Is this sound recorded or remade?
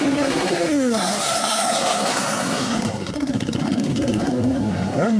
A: remade